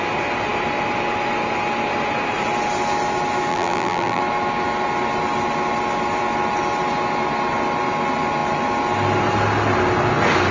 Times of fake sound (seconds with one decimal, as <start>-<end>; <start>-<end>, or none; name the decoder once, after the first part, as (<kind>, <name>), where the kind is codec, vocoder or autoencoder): 3.5-4.2 (vocoder, BigVGAN v2)

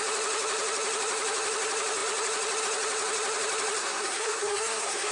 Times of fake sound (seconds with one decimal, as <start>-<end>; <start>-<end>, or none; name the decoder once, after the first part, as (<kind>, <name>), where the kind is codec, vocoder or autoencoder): 3.8-5.1 (codec, SNAC)

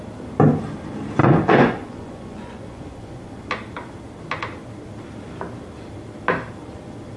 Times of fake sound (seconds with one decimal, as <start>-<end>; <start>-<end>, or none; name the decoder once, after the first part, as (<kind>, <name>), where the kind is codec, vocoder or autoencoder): 1.2-3.4 (vocoder, Vocos)

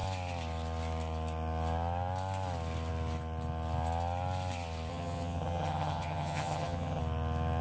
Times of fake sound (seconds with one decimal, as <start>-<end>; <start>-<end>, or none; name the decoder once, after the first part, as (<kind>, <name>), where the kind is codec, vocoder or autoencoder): 4.9-7.0 (vocoder, HiFi-GAN)

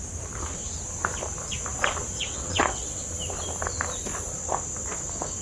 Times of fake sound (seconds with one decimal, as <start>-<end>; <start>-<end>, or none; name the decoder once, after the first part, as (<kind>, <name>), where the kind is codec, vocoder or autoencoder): 2.2-3.0 (vocoder, WaveNeXt)